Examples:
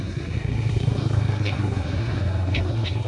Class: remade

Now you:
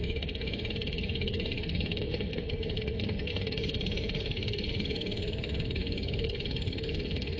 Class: remade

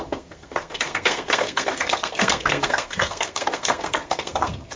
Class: remade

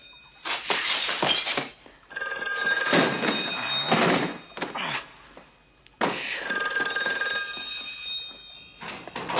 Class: recorded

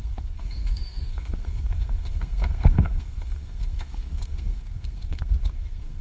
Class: remade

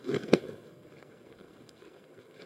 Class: remade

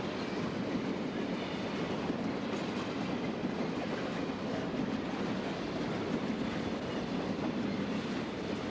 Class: recorded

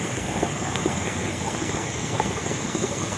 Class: remade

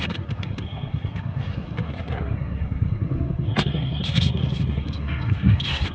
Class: remade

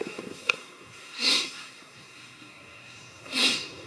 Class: remade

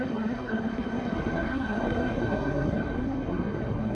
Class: remade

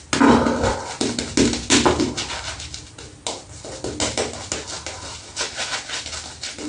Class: recorded